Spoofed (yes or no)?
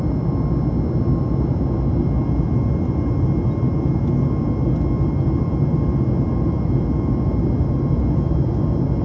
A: no